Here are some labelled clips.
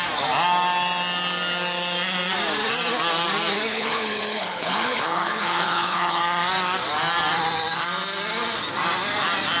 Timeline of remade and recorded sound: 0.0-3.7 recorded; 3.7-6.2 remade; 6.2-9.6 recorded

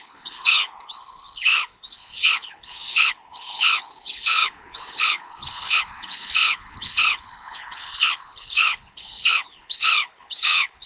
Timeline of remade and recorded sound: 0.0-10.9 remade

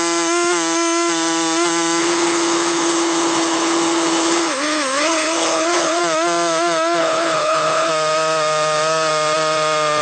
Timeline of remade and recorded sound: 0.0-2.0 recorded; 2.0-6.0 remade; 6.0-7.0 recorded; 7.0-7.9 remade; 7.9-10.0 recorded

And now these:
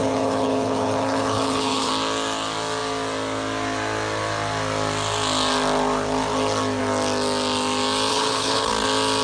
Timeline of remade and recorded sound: 0.0-1.9 remade; 1.9-8.1 recorded; 8.1-8.7 remade; 8.7-9.2 recorded

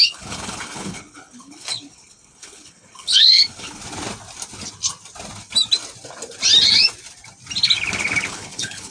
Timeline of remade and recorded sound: 0.0-3.8 remade; 3.8-8.3 recorded; 8.3-8.9 remade